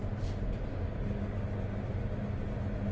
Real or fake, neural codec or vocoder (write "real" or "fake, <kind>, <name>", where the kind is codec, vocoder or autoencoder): real